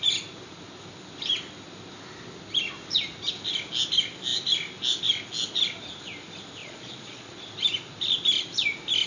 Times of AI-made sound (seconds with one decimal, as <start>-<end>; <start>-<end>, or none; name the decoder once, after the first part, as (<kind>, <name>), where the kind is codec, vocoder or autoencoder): 6.6-7.4 (vocoder, Vocos)